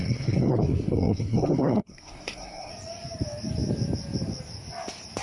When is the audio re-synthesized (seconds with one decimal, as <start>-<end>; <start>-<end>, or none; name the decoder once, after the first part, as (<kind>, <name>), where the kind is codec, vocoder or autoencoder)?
0.0-2.7 (codec, SNAC)